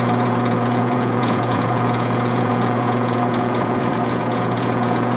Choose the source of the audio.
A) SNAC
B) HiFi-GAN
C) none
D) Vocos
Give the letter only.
D